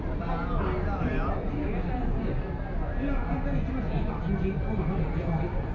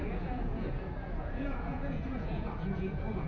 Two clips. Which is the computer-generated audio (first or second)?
second